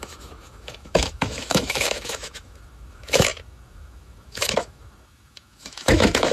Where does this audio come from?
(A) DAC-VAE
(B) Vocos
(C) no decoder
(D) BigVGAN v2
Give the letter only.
A